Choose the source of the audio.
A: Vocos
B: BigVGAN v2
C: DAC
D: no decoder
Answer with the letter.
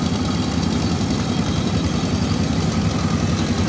B